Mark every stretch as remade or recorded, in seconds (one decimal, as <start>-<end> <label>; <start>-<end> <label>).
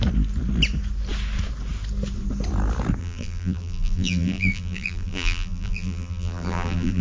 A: 0.0-3.0 recorded; 3.0-7.0 remade